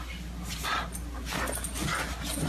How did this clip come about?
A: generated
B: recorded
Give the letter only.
B